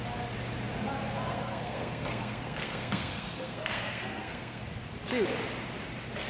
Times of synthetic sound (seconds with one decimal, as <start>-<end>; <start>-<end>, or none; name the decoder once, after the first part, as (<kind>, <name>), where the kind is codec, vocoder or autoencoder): 1.3-4.6 (codec, SNAC)